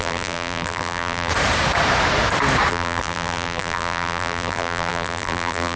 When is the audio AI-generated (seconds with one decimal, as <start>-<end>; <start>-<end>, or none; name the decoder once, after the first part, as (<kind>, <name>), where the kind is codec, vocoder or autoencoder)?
0.0-1.3 (vocoder, BigVGAN v2); 2.7-5.8